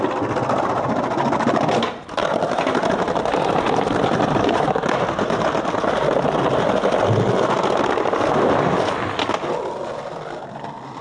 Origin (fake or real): real